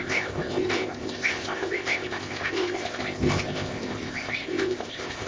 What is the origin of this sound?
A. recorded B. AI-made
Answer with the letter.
B